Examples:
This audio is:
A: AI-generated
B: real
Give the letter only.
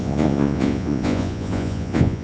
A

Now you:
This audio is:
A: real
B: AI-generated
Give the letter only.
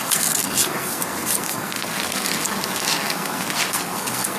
B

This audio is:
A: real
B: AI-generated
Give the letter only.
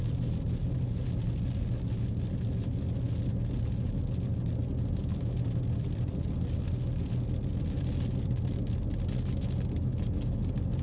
A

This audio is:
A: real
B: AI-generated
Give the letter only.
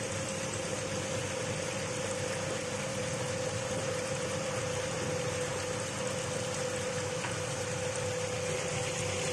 A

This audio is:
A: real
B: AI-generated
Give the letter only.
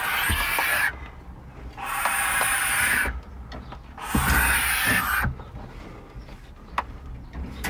A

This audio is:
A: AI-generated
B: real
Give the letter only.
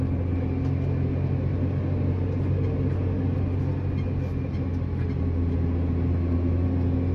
B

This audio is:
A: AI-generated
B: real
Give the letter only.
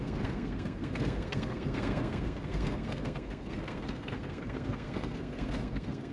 A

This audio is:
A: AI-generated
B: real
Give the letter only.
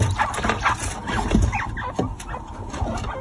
B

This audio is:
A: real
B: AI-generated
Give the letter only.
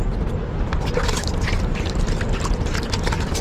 A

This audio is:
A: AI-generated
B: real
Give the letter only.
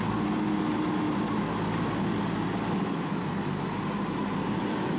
B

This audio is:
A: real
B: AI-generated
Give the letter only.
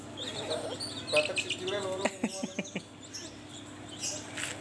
A